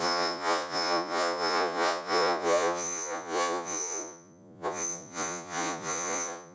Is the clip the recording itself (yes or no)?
no